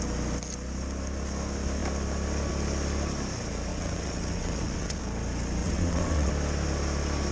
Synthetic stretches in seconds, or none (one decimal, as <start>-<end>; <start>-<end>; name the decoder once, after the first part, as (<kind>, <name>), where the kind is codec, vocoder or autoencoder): 3.7-5.0 (vocoder, WaveNeXt); 5.6-6.3